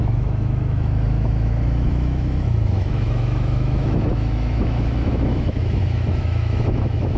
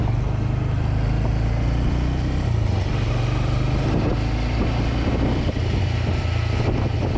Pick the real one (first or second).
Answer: second